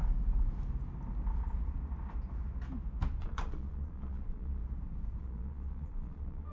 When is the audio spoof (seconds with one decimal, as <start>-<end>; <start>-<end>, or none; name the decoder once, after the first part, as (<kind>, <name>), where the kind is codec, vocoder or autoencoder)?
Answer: 3.2-4.6 (vocoder, Vocos); 5.2-6.5